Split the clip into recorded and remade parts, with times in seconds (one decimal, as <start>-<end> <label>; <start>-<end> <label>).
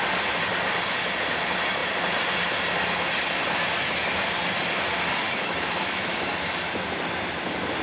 0.0-5.2 recorded; 5.2-6.3 remade; 6.3-7.8 recorded